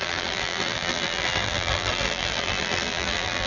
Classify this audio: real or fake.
fake